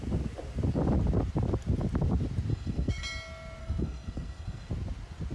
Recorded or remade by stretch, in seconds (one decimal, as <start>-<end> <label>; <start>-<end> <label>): 0.0-2.5 recorded; 2.5-3.0 remade; 3.0-3.6 recorded; 3.6-4.7 remade; 4.7-5.3 recorded